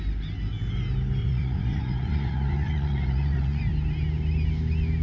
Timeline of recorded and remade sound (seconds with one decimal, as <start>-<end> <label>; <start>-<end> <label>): 0.0-1.2 recorded; 1.2-3.6 remade; 3.6-5.0 recorded